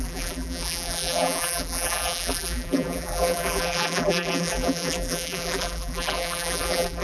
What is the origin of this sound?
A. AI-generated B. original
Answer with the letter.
A